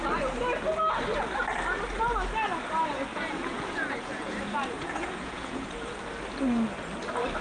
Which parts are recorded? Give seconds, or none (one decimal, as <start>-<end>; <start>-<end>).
0.0-3.1; 5.9-7.4